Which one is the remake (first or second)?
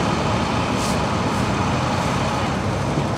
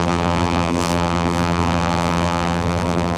second